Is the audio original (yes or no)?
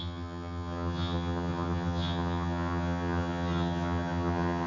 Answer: no